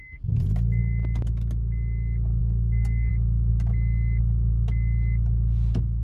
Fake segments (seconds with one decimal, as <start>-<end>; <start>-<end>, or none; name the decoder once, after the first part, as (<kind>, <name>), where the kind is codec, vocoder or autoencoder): 2.4-3.1 (codec, SNAC)